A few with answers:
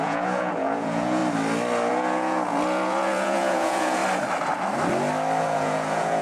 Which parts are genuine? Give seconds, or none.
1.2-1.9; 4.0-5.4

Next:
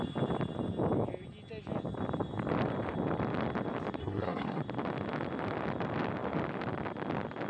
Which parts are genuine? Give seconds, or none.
0.0-4.0; 4.6-7.5

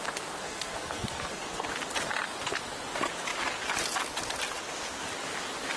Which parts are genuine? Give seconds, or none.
0.0-0.4; 1.4-5.8

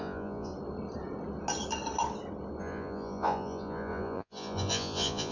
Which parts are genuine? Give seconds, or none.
0.5-2.6

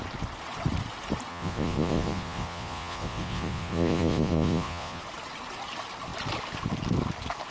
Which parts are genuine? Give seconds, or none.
0.0-1.3; 5.0-7.5

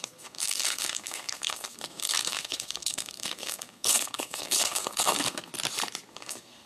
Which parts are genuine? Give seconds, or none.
5.5-6.1